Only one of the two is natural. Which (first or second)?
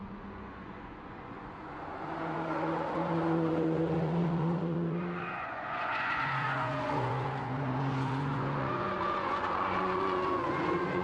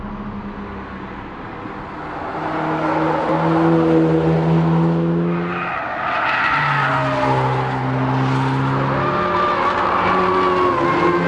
second